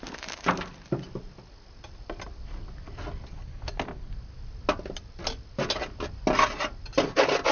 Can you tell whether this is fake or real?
real